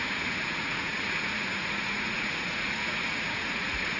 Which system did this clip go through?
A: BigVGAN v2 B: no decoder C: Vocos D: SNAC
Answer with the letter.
C